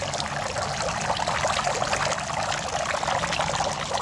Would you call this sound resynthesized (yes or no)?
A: no